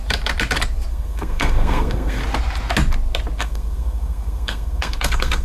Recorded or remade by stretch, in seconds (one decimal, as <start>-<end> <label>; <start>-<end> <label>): 0.0-0.9 recorded; 0.9-2.2 remade; 2.2-3.4 recorded; 3.4-5.4 remade